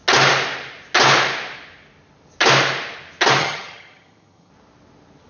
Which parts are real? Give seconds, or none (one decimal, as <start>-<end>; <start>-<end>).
0.0-3.4; 4.5-5.3